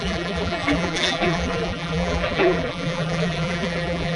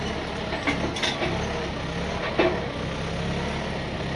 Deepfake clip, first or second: first